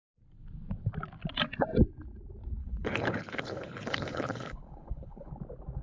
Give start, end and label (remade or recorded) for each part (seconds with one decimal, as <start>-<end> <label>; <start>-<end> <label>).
0.0-2.6 recorded; 2.6-5.3 remade; 5.3-5.8 recorded